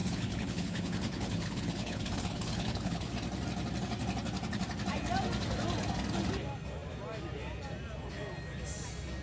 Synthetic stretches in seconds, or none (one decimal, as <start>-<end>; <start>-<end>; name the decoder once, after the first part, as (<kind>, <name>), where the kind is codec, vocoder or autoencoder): 0.0-3.1 (codec, HILCodec)